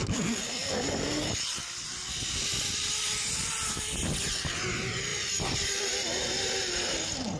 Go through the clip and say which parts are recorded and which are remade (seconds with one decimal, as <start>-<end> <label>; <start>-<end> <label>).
0.0-7.4 recorded